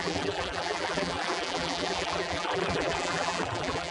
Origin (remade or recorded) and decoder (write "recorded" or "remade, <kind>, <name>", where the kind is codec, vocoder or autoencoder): remade, vocoder, BigVGAN v2